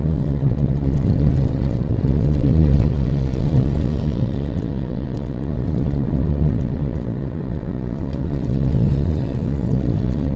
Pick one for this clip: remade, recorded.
remade